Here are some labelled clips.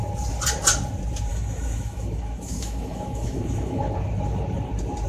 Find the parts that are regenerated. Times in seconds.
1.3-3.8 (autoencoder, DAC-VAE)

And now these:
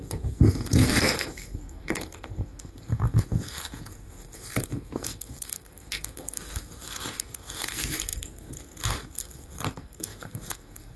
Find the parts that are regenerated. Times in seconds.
0.0-11.0 (codec, SNAC)

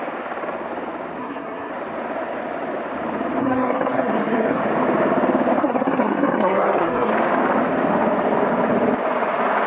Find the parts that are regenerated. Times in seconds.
1.2-1.7 (codec, SNAC); 3.4-4.6; 5.6-7.1

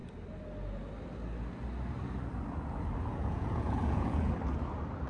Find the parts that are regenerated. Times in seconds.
3.1-4.3 (vocoder, Vocos)

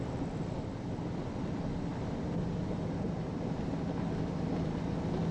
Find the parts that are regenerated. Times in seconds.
none

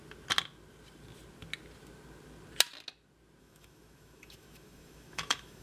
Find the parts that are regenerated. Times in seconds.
3.4-5.6 (autoencoder, DAC-VAE)